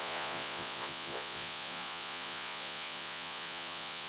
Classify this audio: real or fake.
fake